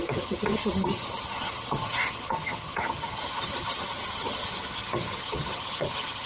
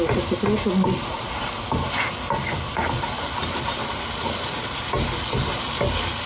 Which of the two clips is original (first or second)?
second